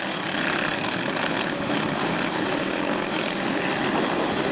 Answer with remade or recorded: recorded